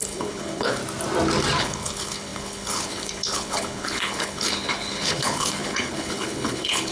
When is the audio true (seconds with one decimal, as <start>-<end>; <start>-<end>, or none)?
0.8-1.6